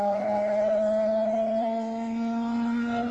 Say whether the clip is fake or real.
fake